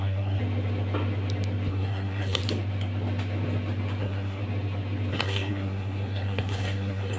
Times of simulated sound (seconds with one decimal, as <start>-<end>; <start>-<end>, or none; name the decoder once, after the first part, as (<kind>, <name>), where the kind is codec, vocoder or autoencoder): 0.0-0.4 (codec, SNAC); 1.7-2.4; 4.0-4.4; 5.1-7.2